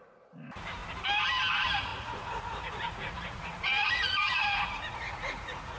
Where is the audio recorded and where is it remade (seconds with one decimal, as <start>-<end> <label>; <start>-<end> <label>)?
0.0-0.8 remade; 0.8-1.5 recorded; 1.5-5.8 remade